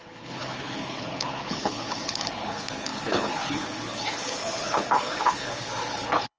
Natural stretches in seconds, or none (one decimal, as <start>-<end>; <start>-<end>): none